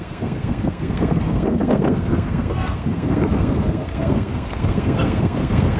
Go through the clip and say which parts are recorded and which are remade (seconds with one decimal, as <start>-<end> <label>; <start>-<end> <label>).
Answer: 0.0-5.8 remade